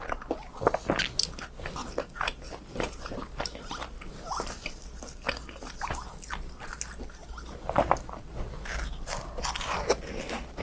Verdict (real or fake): real